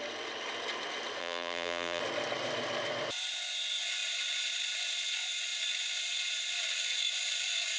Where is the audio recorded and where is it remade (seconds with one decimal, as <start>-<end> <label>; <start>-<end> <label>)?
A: 0.0-1.2 recorded; 1.2-2.0 remade; 2.0-7.8 recorded